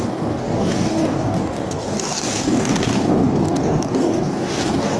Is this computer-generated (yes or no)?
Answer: yes